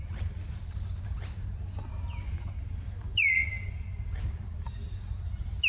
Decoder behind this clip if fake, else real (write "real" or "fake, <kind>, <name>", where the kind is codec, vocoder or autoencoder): real